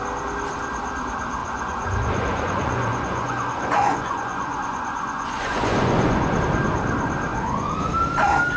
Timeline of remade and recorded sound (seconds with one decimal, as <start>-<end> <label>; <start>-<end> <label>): 0.0-1.4 recorded; 1.4-6.4 remade; 6.4-7.3 recorded; 7.3-7.9 remade; 7.9-8.6 recorded

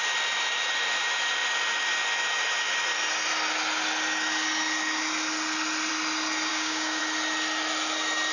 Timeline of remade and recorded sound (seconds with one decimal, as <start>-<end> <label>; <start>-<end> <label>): 0.0-6.5 recorded; 6.5-7.0 remade; 7.0-8.3 recorded

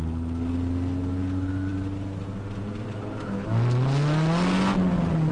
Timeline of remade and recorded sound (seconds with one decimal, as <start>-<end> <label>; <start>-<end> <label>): 0.0-5.3 recorded